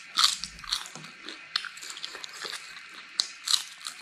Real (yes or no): no